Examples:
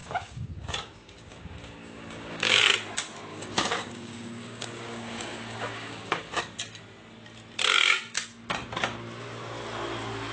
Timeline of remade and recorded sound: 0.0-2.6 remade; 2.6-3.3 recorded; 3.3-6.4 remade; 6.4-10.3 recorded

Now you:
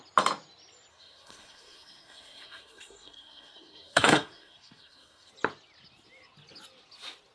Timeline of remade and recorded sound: 0.0-0.9 recorded; 0.9-5.3 remade; 5.3-7.3 recorded

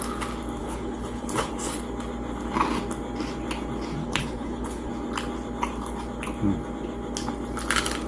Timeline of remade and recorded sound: 0.0-0.6 recorded; 0.6-1.5 remade; 1.5-4.0 recorded; 4.0-4.9 remade; 4.9-8.1 recorded

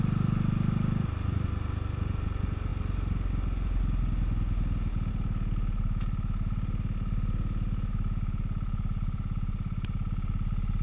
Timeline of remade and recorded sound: 0.0-10.8 recorded

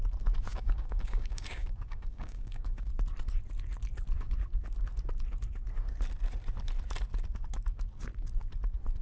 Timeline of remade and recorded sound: 0.0-0.5 recorded; 0.5-2.9 remade; 2.9-9.0 recorded

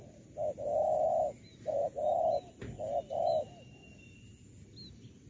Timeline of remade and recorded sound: 0.0-5.3 recorded